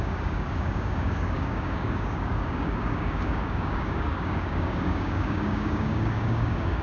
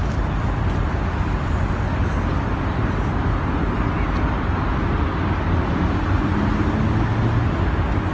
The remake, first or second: first